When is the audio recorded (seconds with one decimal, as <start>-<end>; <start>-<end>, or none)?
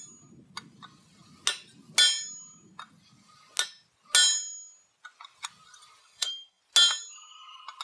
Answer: 0.0-6.0; 6.6-7.8